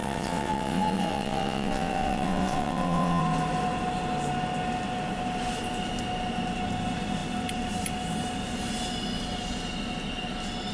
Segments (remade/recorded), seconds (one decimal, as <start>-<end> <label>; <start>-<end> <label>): 0.0-3.2 remade; 3.2-10.7 recorded